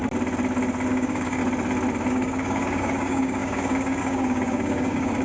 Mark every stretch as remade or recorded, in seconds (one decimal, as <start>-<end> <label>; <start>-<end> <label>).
0.0-0.9 recorded; 0.9-1.4 remade; 1.4-2.1 recorded; 2.1-5.2 remade